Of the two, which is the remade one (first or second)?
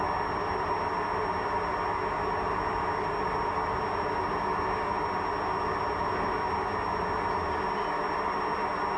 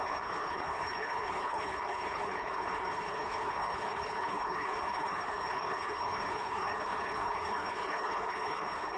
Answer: second